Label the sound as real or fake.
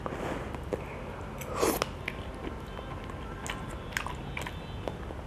real